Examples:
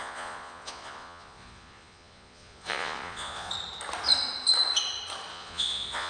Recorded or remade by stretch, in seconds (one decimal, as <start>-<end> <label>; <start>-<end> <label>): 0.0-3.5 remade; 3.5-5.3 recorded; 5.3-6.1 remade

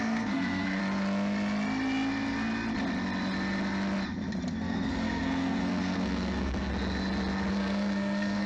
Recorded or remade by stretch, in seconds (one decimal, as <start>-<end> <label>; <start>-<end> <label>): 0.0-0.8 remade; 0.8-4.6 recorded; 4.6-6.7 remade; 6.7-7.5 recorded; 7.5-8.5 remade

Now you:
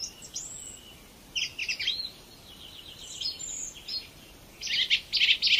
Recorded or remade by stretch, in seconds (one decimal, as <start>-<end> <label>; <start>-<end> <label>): 0.0-1.6 recorded; 1.6-3.2 remade; 3.2-5.6 recorded